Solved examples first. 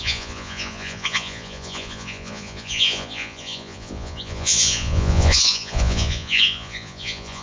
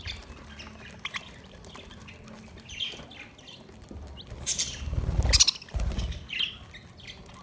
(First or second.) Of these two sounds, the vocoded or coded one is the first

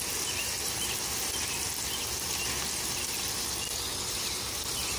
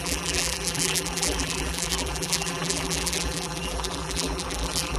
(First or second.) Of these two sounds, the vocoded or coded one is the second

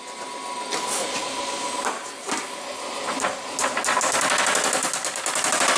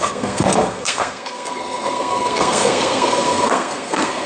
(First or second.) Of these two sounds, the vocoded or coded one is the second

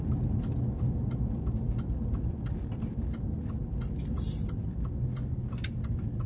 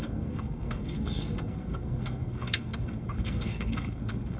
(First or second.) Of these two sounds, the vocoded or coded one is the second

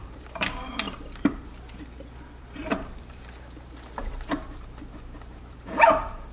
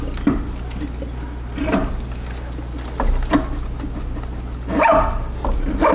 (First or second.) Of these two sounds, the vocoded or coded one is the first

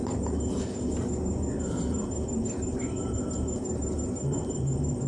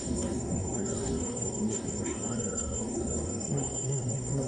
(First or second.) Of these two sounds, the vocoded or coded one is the second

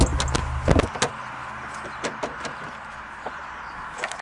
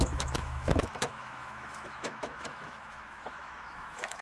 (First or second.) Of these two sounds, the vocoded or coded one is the second